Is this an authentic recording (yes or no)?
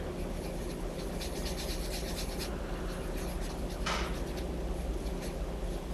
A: yes